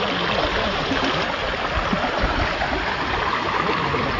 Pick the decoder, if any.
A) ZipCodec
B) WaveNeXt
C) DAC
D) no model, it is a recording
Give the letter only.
D